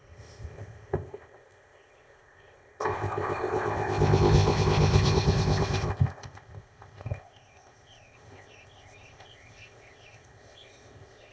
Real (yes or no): no